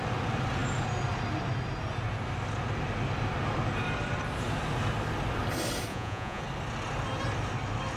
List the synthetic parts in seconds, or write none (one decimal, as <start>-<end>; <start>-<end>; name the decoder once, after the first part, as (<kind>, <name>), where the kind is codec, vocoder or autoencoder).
5.9-6.4 (vocoder, Vocos)